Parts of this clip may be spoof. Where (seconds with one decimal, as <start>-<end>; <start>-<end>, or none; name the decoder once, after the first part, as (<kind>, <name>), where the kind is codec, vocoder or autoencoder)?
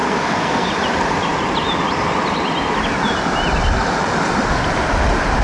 0.0-0.7 (codec, SNAC)